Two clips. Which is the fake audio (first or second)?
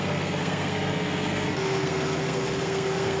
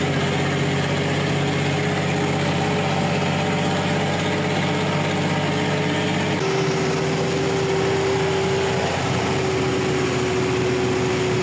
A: first